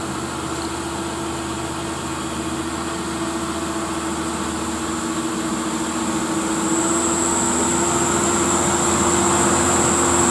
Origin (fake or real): real